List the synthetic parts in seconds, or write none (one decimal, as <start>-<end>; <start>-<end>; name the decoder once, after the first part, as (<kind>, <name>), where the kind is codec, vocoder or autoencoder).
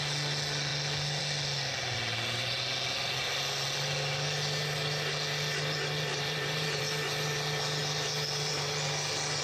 6.1-6.8 (vocoder, BigVGAN v2)